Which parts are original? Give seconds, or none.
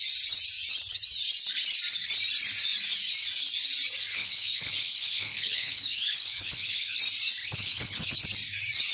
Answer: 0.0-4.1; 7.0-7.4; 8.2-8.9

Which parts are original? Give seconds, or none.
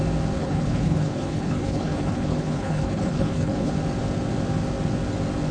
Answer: 0.0-0.4; 3.7-5.5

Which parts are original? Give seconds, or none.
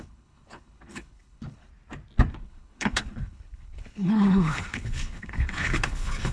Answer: 1.7-2.3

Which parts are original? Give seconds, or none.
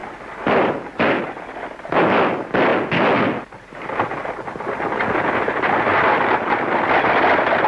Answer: 0.0-7.7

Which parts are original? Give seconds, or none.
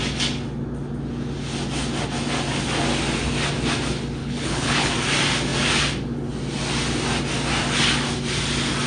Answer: 0.0-4.2; 4.9-8.9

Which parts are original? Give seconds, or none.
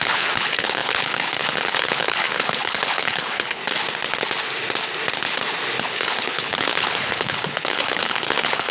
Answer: 3.6-5.8